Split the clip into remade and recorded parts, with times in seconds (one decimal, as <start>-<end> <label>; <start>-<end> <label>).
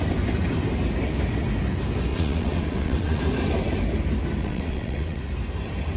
0.0-2.1 recorded; 2.1-3.2 remade; 3.2-4.4 recorded; 4.4-5.2 remade; 5.2-6.0 recorded